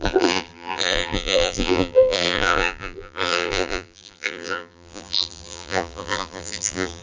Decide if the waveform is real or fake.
fake